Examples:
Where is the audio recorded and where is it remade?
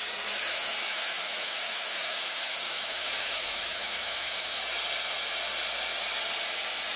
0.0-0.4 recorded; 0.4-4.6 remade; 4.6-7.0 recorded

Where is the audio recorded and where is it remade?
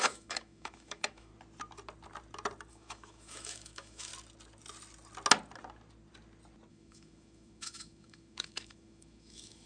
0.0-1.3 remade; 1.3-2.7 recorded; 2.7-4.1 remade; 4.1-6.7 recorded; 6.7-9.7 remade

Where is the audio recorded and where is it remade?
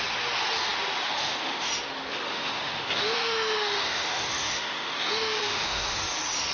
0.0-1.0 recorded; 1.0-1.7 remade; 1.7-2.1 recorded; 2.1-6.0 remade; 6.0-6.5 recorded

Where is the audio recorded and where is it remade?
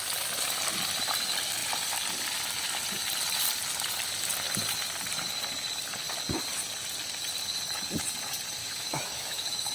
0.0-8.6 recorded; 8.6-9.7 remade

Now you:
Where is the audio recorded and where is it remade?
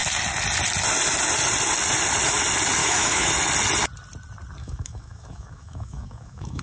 0.0-2.8 recorded; 2.8-3.3 remade; 3.3-4.6 recorded; 4.6-6.6 remade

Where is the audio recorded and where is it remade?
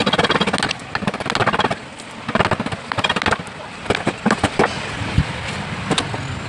0.0-6.5 recorded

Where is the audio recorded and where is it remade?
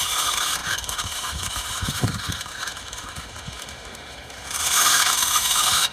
0.0-5.9 remade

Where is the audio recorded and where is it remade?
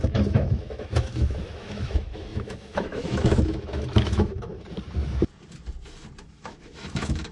0.0-4.5 remade; 4.5-6.2 recorded; 6.2-7.3 remade